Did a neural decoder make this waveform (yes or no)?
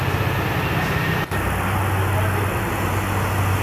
no